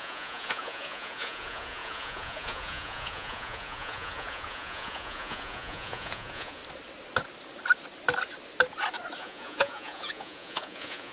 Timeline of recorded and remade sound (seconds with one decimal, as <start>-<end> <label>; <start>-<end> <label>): 0.0-6.6 remade; 6.6-9.2 recorded; 9.2-11.1 remade